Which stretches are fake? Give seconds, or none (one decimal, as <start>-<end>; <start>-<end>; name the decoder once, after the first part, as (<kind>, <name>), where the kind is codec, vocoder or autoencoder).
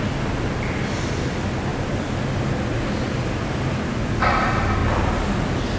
none